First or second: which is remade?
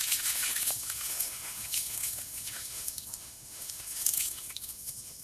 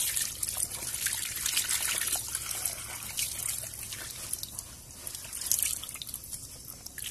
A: first